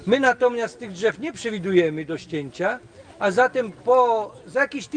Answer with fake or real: real